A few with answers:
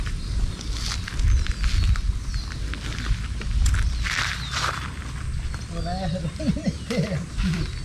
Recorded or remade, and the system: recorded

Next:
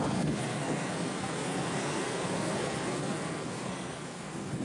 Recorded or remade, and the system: remade, codec, SNAC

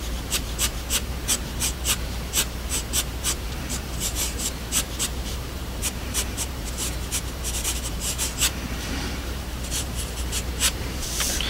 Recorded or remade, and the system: remade, vocoder, BigVGAN v2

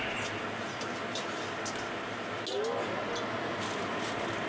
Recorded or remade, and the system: recorded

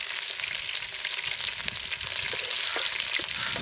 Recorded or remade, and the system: recorded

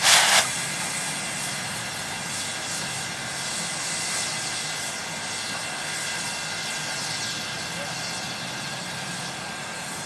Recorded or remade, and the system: recorded